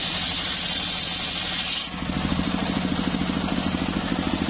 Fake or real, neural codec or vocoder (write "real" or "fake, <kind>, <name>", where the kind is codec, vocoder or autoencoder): real